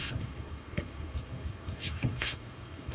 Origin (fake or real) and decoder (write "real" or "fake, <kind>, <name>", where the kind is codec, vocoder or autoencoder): fake, codec, SNAC